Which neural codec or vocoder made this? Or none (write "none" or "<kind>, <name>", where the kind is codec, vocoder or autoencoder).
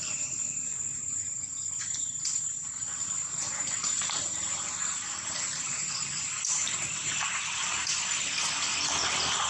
vocoder, BigVGAN v2